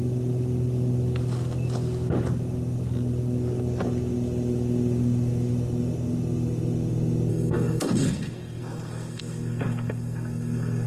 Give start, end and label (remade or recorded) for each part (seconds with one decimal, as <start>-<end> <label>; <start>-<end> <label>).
0.0-7.3 recorded; 7.3-10.9 remade